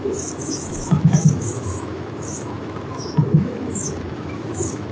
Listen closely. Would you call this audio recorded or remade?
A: remade